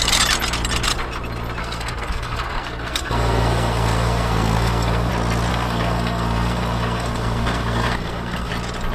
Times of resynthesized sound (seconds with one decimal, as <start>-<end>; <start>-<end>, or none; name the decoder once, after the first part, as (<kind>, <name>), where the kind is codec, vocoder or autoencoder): 1.6-5.1 (codec, SNAC); 5.5-8.5